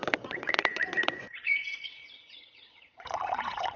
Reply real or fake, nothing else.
fake